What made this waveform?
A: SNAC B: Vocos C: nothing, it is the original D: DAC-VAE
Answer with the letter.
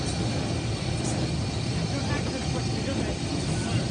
C